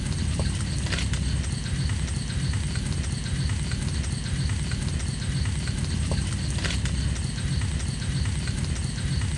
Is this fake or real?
real